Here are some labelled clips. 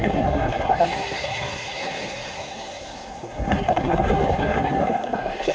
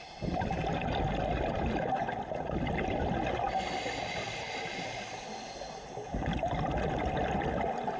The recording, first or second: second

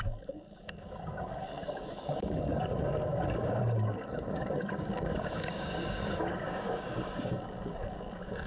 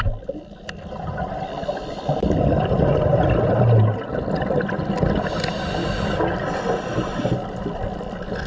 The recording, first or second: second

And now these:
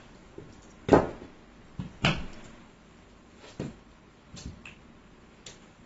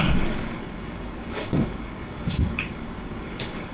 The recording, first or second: first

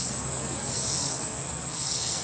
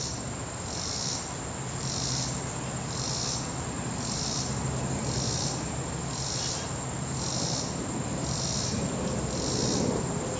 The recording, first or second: second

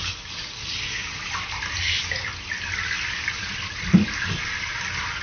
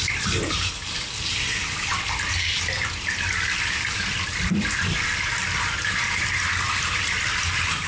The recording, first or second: first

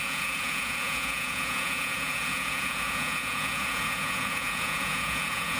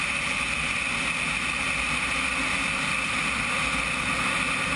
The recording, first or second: second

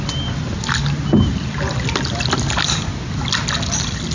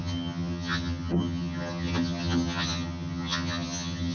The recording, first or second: first